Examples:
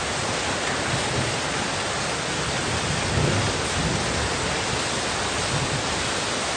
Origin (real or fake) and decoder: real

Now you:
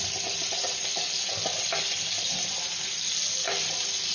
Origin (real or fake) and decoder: real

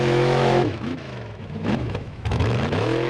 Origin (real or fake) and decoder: fake, autoencoder, DAC-VAE